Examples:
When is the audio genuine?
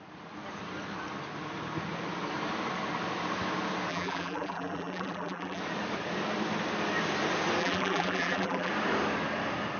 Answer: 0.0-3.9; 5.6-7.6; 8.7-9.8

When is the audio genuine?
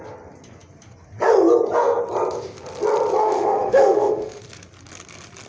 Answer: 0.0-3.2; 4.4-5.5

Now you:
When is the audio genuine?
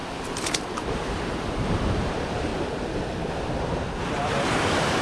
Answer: 0.0-0.6; 2.5-3.4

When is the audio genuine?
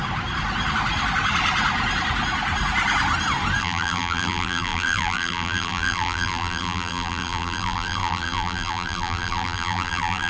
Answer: 0.0-3.6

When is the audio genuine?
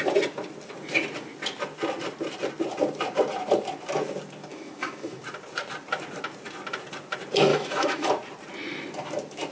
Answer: 0.0-4.5; 5.2-7.5; 8.1-9.5